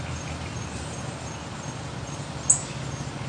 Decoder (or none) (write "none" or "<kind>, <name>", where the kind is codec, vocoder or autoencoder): none